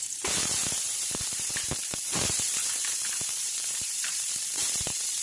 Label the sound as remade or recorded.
remade